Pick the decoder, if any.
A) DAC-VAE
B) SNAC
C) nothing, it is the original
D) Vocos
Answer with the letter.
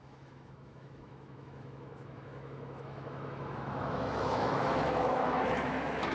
A